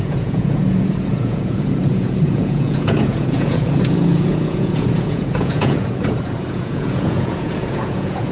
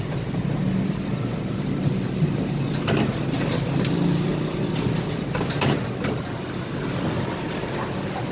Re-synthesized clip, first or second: first